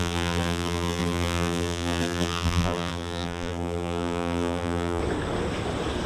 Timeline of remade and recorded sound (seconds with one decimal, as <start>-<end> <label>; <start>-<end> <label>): 0.0-5.0 remade; 5.0-6.1 recorded